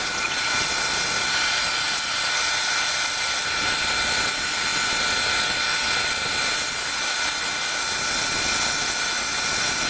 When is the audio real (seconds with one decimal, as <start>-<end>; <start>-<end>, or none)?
0.0-9.9